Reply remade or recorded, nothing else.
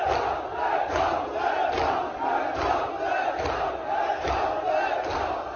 recorded